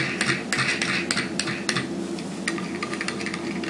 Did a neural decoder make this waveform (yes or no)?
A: no